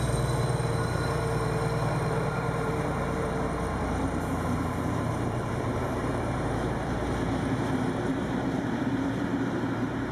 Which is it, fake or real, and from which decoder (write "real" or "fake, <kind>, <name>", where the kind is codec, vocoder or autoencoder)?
fake, vocoder, BigVGAN v2